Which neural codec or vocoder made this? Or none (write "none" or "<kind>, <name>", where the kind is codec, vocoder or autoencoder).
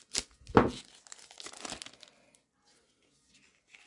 none